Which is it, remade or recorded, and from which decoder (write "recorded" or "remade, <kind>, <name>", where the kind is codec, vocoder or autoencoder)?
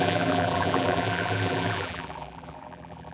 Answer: remade, vocoder, BigVGAN v2